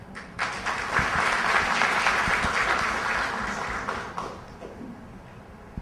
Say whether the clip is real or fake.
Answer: real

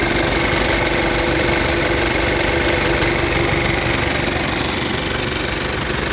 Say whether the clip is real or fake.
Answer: real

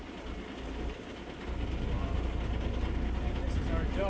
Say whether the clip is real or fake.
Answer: real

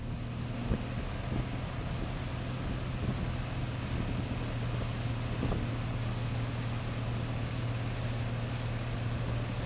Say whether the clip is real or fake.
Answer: real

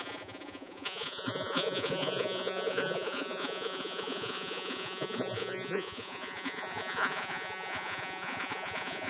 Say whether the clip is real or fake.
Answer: fake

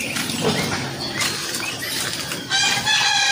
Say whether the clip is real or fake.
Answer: real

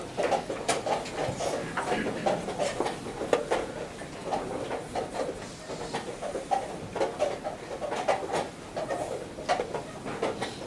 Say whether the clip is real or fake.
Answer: real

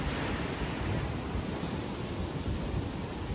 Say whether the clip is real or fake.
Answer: real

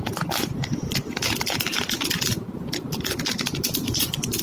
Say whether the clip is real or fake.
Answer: real